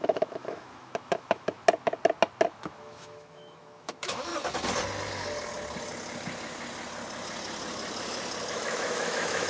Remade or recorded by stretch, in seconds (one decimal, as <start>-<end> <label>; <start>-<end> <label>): 0.0-1.6 remade; 1.6-2.5 recorded; 2.5-4.3 remade; 4.3-8.5 recorded; 8.5-9.5 remade